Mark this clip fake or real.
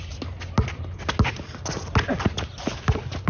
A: real